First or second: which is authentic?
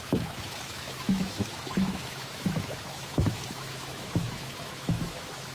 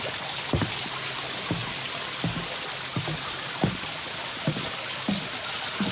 second